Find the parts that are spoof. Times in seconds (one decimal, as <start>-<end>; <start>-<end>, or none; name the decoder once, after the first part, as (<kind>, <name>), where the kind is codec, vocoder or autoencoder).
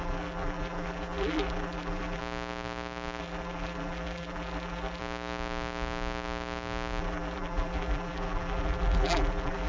0.0-2.2 (vocoder, BigVGAN v2); 3.2-5.0; 7.0-9.7